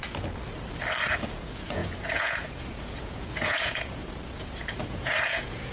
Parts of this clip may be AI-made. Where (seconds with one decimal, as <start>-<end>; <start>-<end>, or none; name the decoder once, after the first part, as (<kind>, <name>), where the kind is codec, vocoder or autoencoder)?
1.0-5.7 (vocoder, Vocos)